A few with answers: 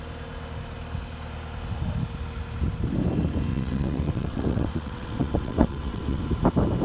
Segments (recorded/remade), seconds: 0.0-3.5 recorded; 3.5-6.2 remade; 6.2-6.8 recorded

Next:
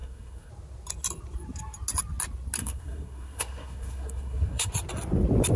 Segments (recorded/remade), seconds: 0.0-0.5 remade; 0.5-2.6 recorded; 2.6-4.7 remade; 4.7-5.6 recorded

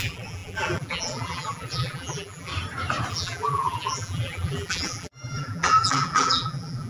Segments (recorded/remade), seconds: 0.0-2.5 remade; 2.5-3.1 recorded; 3.1-6.9 remade